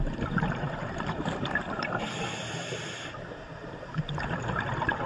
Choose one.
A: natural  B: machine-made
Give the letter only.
B